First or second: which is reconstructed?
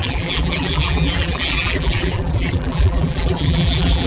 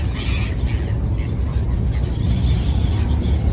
first